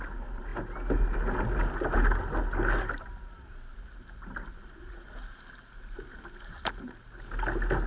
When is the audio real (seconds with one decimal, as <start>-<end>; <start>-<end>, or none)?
0.0-7.9